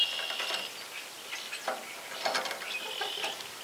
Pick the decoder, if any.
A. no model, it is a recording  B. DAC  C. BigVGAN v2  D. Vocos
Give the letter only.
A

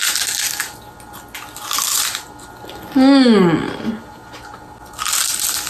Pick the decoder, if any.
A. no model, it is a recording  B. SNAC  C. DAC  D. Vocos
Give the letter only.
A